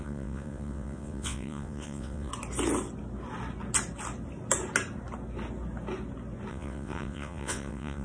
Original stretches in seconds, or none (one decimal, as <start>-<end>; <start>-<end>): 2.3-6.5